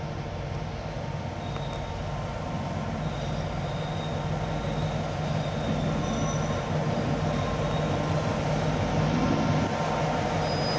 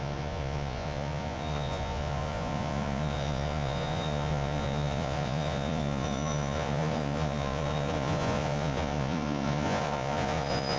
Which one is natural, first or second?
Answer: first